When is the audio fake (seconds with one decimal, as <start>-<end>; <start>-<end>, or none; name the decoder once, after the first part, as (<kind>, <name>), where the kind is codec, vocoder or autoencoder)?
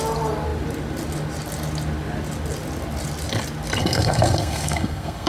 3.8-5.3 (codec, SNAC)